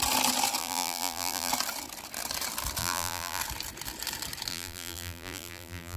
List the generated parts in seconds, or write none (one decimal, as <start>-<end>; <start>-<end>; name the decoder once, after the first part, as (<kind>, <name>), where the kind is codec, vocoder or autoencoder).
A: 0.6-1.5 (vocoder, BigVGAN v2); 2.8-3.4; 4.5-6.0